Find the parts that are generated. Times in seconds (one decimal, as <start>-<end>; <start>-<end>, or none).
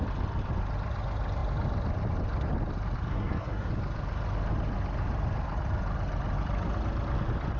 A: 3.1-3.7